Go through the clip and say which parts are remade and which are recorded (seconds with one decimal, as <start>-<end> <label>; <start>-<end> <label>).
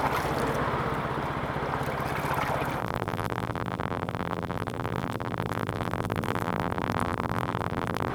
0.0-2.8 recorded; 2.8-8.1 remade